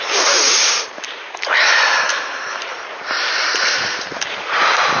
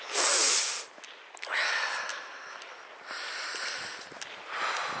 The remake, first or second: first